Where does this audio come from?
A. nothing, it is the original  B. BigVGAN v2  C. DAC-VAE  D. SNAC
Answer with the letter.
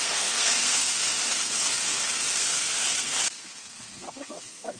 D